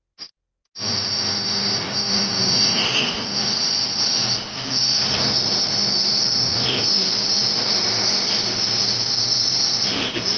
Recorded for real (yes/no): yes